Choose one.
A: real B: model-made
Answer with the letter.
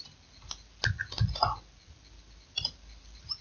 A